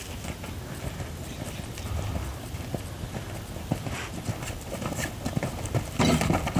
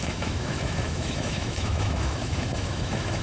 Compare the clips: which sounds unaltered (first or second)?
first